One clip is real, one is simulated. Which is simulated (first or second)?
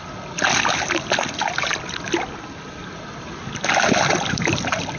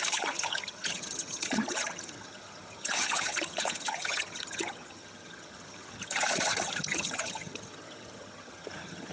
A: second